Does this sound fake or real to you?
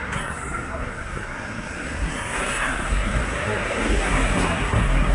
fake